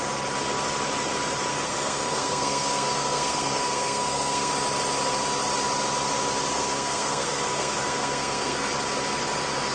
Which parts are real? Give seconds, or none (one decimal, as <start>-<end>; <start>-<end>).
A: 0.0-1.5; 4.5-6.5; 8.7-9.7